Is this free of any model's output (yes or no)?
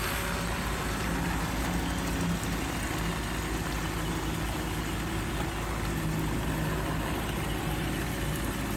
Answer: yes